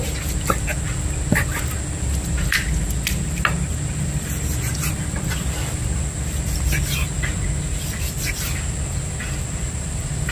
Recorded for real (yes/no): yes